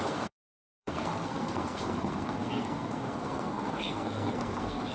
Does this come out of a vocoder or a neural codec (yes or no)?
yes